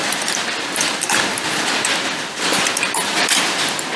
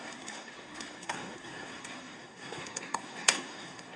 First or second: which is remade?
second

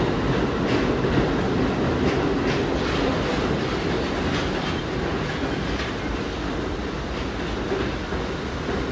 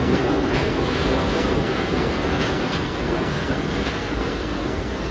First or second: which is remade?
second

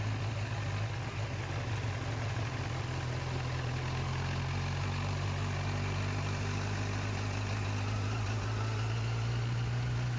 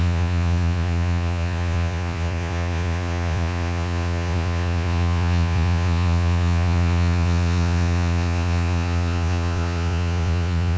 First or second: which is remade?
second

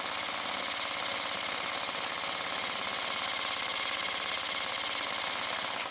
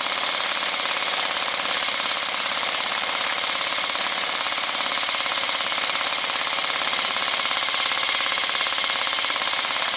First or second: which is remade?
second